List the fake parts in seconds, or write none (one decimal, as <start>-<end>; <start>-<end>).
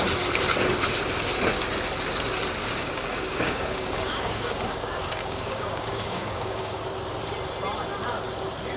2.6-6.8